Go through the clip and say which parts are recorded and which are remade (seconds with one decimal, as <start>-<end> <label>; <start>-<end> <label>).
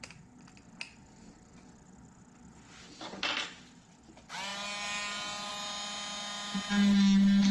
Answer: 0.0-7.5 recorded